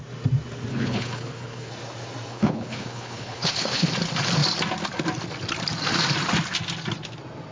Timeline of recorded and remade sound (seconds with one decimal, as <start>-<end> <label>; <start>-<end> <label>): 0.0-0.7 recorded; 0.7-1.7 remade; 1.7-2.3 recorded; 2.3-3.9 remade; 3.9-7.5 recorded